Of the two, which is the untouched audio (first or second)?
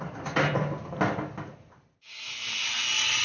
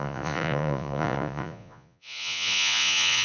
first